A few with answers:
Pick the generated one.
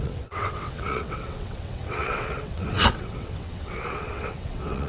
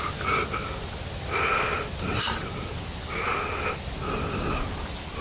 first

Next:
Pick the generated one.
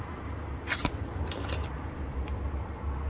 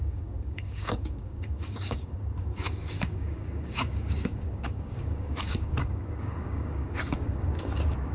second